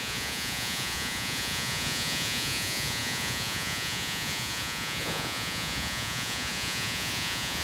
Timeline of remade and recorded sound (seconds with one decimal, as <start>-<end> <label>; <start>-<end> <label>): 0.0-7.6 remade